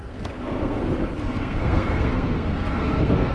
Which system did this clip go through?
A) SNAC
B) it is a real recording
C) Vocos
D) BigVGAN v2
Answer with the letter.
A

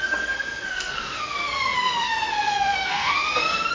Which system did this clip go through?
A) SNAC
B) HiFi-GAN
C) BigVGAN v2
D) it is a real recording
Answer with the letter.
A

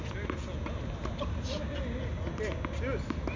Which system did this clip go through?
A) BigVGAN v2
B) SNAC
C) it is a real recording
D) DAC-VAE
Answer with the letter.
C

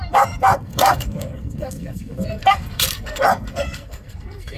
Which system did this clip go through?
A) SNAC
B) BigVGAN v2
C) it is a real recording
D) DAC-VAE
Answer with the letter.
A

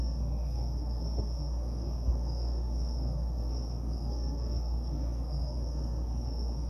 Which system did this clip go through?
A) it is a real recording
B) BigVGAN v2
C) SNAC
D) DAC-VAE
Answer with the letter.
C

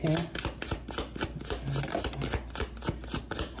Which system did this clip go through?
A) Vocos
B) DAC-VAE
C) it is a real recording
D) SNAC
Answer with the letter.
C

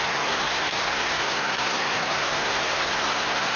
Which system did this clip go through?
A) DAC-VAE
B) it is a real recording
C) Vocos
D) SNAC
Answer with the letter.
D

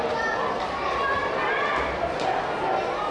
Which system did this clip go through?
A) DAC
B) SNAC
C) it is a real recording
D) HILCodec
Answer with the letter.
C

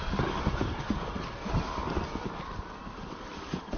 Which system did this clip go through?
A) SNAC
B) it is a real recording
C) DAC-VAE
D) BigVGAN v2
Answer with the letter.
B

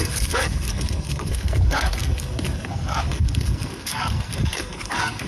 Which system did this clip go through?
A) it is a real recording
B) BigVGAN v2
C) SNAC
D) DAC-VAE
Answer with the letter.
C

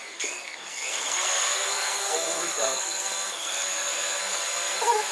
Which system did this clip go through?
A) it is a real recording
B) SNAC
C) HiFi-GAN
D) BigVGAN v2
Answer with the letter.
B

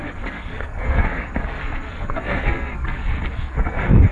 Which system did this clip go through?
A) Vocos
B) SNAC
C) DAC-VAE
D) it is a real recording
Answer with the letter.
B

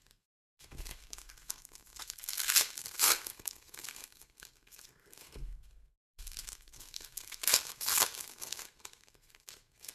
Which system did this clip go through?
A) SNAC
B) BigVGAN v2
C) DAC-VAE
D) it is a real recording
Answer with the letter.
A